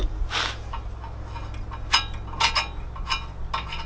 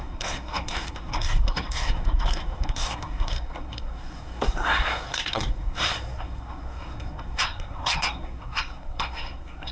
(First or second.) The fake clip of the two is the second